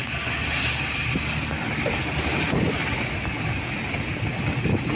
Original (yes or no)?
yes